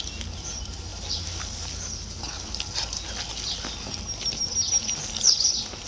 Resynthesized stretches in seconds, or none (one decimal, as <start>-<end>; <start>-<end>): none